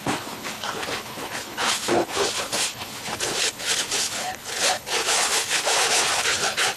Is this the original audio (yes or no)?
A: no